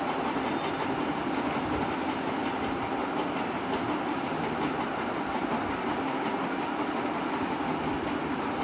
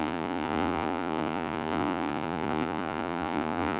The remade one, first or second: second